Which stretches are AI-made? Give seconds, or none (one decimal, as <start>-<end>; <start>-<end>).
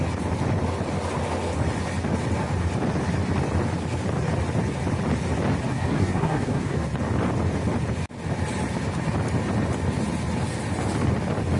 5.7-6.9